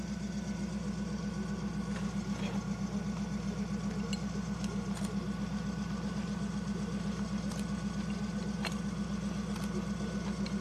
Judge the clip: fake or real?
real